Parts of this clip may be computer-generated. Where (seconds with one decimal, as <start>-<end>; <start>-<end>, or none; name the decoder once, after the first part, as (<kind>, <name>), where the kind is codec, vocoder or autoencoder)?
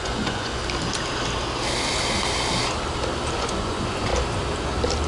0.0-0.6 (vocoder, Vocos); 3.4-4.1